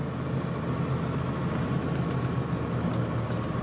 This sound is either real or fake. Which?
real